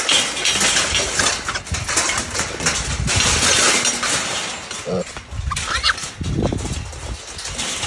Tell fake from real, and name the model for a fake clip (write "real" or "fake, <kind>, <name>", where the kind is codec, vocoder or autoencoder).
real